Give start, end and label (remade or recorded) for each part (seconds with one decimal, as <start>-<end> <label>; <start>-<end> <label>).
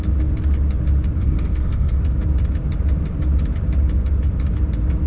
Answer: 0.0-1.2 recorded; 1.2-2.0 remade; 2.0-5.1 recorded